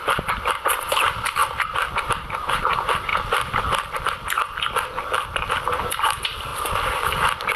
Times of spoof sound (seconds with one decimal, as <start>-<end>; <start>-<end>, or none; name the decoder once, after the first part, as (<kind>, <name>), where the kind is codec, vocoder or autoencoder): 0.0-1.4 (vocoder, BigVGAN v2); 2.0-3.1; 5.8-6.5